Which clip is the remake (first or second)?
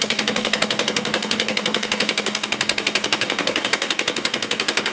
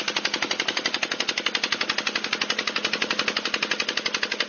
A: first